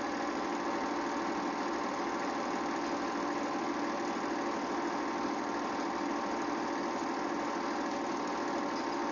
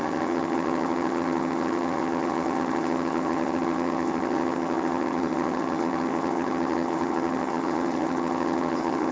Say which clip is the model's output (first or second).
second